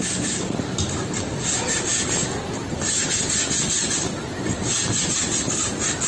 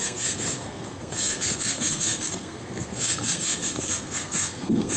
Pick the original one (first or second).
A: first